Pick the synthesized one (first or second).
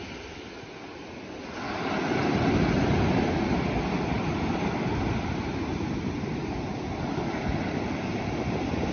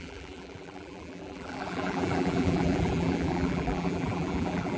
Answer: second